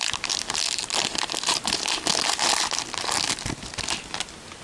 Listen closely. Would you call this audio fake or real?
real